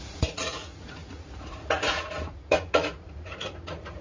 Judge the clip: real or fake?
fake